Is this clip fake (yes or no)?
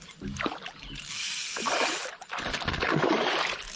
no